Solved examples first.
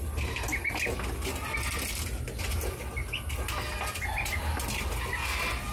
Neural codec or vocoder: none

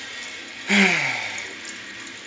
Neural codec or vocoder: none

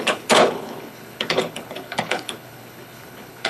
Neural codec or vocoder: codec, HILCodec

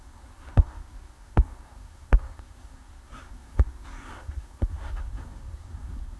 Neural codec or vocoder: codec, SNAC